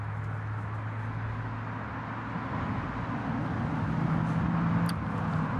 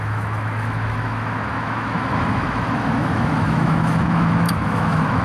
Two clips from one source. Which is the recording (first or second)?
first